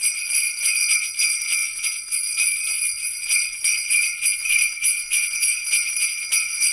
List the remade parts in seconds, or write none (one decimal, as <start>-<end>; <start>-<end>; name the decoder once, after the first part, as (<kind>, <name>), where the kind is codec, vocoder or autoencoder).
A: 0.0-6.7 (vocoder, Vocos)